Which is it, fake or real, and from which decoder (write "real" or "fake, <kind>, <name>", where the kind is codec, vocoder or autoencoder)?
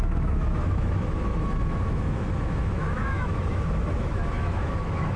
fake, autoencoder, DAC-VAE